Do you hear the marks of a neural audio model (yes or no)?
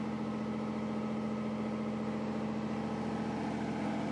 no